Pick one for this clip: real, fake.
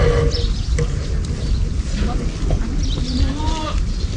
real